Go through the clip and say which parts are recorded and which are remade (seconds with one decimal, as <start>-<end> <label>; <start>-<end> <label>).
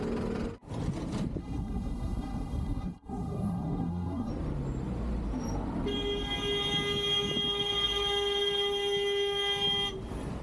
0.0-1.4 recorded; 1.4-4.3 remade; 4.3-10.4 recorded